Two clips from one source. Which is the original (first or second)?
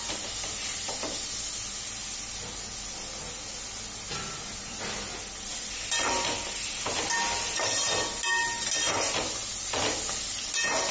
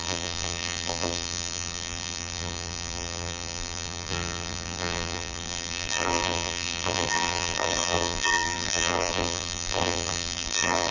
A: first